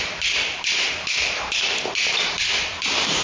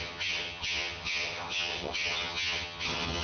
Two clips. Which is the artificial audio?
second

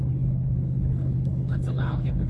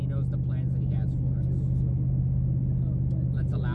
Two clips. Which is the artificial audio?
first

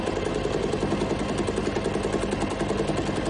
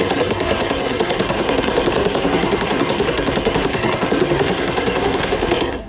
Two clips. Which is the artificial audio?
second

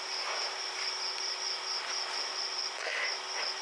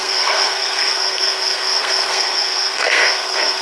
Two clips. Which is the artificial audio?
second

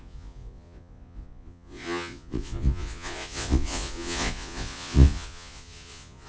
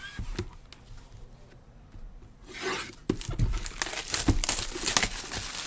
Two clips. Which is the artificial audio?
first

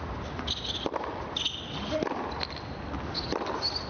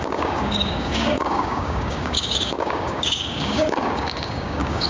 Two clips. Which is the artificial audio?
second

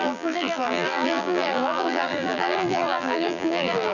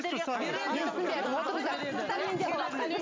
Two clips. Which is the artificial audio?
first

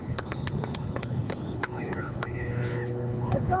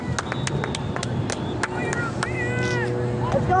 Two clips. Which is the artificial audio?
first